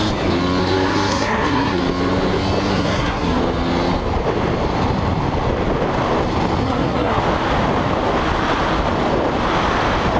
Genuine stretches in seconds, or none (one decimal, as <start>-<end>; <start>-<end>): 0.0-0.6; 1.8-2.7; 3.4-6.6; 7.2-10.2